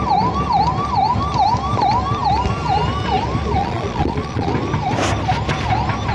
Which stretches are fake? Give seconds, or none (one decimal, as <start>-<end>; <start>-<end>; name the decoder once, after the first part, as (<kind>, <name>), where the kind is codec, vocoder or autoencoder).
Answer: 3.6-4.5 (vocoder, Vocos)